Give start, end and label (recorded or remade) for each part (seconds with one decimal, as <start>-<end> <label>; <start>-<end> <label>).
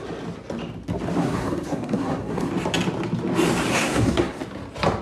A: 0.0-1.2 recorded; 1.2-2.5 remade; 2.5-3.7 recorded; 3.7-4.4 remade; 4.4-5.0 recorded